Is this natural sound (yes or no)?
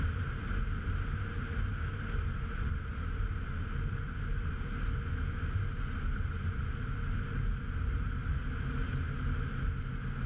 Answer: yes